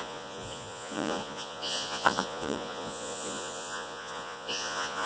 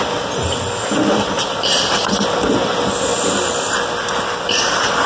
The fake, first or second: first